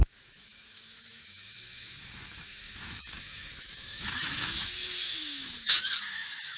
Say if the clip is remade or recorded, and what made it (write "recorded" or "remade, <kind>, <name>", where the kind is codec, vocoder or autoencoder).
remade, autoencoder, DAC-VAE